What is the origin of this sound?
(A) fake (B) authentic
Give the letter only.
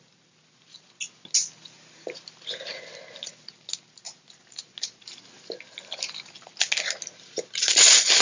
B